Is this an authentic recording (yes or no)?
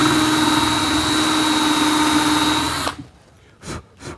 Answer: yes